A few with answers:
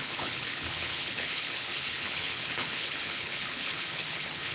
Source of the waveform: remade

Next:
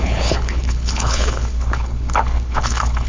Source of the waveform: remade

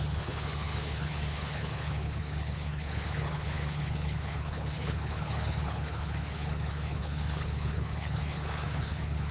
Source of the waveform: remade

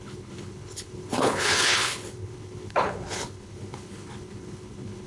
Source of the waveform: remade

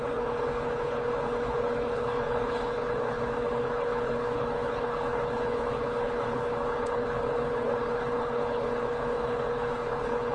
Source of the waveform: remade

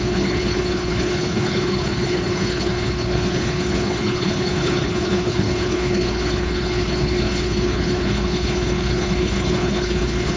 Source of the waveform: remade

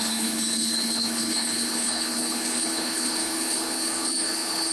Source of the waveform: remade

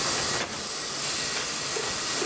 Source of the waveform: recorded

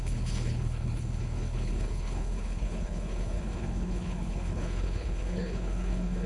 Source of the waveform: remade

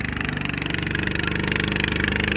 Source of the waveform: recorded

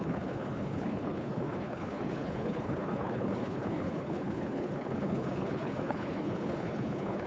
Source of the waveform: remade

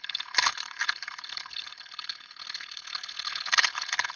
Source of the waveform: remade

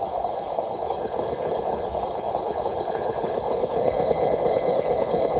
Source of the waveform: remade